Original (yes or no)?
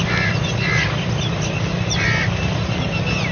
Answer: yes